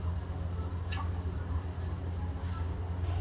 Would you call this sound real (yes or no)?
yes